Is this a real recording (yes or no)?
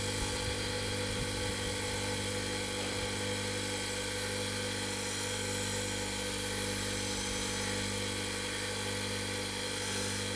yes